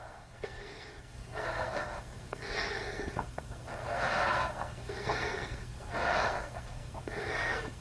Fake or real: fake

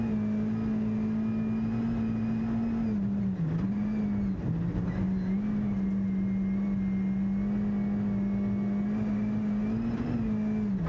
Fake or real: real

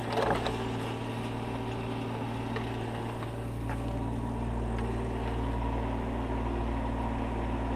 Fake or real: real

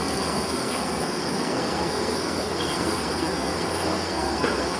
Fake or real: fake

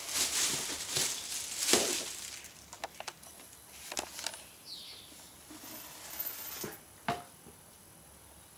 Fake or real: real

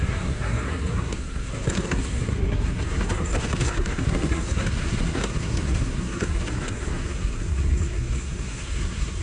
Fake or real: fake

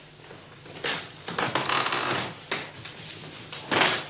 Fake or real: real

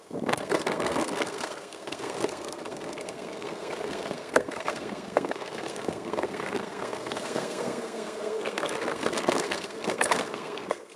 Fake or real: fake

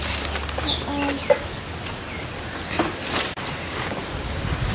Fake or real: real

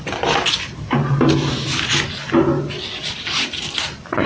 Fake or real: real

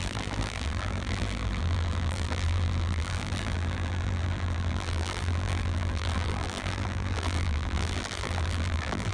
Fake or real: fake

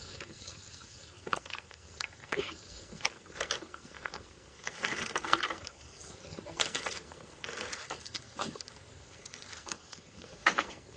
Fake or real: fake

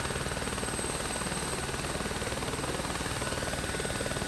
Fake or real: real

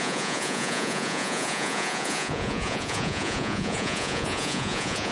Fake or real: fake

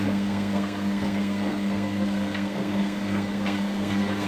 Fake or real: fake